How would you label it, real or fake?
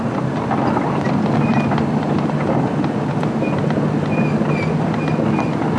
real